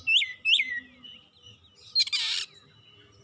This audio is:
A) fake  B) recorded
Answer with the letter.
B